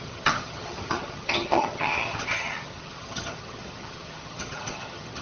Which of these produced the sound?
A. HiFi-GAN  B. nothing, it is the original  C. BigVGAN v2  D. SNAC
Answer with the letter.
A